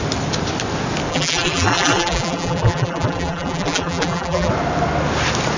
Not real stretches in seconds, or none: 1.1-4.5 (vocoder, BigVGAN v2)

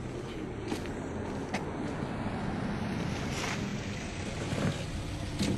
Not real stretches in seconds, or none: 3.7-5.0 (vocoder, BigVGAN v2)

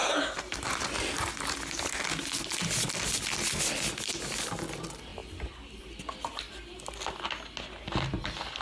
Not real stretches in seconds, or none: 5.2-5.8 (vocoder, BigVGAN v2)

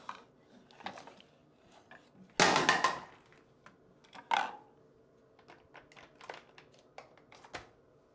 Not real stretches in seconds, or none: none

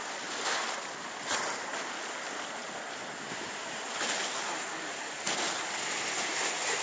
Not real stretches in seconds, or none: none

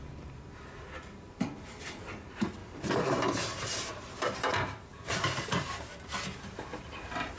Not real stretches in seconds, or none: 0.0-2.6 (vocoder, BigVGAN v2); 3.3-7.4

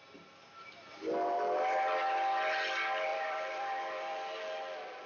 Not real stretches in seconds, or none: 3.1-4.3 (vocoder, BigVGAN v2)